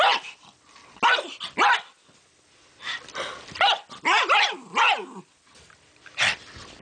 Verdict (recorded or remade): recorded